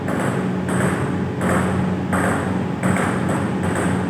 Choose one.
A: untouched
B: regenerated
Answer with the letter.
A